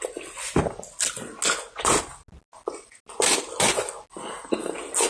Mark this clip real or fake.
real